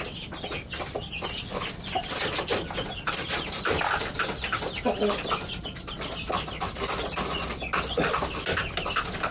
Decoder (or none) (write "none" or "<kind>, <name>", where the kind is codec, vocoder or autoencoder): none